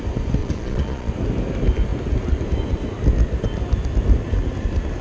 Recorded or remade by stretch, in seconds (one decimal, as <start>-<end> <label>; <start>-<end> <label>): 0.0-0.4 recorded; 0.4-1.1 remade; 1.1-5.0 recorded